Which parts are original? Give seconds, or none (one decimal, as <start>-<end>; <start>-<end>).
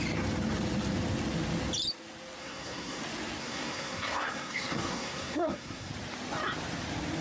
0.0-2.4; 3.0-3.4; 5.9-7.2